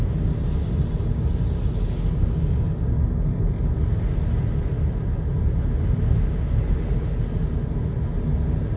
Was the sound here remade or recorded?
recorded